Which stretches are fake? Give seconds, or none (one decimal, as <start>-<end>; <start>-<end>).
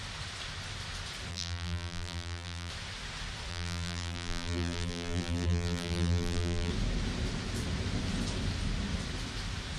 1.3-2.7; 3.5-6.7